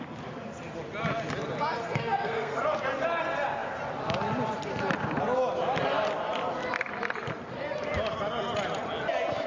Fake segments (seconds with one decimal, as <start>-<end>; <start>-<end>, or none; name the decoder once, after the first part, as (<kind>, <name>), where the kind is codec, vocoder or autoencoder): 1.8-2.6 (codec, SNAC)

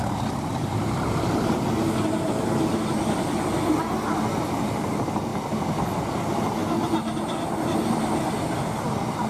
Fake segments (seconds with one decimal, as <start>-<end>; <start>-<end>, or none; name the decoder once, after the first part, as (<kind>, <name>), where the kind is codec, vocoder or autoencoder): 0.0-1.3 (vocoder, BigVGAN v2)

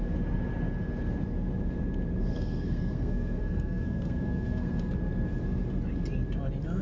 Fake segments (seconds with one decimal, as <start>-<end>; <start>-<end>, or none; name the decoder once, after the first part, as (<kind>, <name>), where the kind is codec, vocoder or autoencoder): 2.3-4.9 (codec, SNAC)

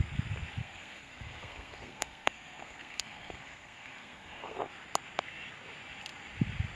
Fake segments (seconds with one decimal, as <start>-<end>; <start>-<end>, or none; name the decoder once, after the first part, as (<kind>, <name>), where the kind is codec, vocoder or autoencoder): 0.6-4.7 (codec, SNAC)

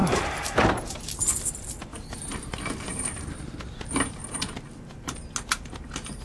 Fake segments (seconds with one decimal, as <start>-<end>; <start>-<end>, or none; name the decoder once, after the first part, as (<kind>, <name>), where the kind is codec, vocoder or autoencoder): 0.0-1.2 (vocoder, BigVGAN v2); 1.9-3.4